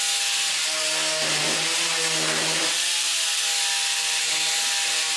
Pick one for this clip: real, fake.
real